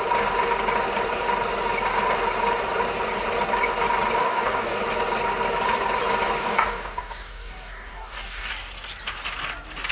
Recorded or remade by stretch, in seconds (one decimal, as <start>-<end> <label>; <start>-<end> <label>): 0.0-4.2 recorded; 4.2-4.8 remade; 4.8-6.4 recorded; 6.4-8.5 remade; 8.5-9.9 recorded